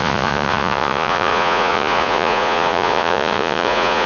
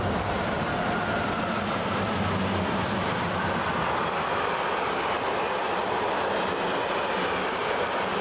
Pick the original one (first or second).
second